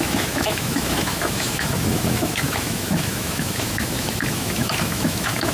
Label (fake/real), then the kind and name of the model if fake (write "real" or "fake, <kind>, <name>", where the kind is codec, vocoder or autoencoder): fake, autoencoder, DAC-VAE